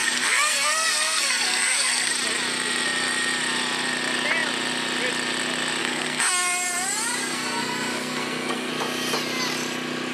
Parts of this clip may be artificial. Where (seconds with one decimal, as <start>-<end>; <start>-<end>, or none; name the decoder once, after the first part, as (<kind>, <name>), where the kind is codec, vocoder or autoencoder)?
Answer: 0.0-2.1 (codec, SNAC); 5.8-6.3; 7.2-8.7